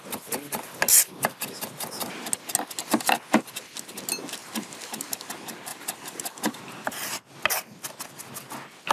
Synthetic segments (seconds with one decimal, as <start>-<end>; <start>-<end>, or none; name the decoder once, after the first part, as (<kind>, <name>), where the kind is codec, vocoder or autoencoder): 4.4-5.3 (vocoder, BigVGAN v2); 5.7-6.6